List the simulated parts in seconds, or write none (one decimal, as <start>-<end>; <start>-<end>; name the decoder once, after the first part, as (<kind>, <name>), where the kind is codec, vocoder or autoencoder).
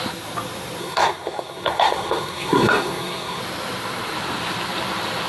0.8-3.4 (codec, SNAC)